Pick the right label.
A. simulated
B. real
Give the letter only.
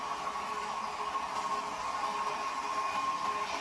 B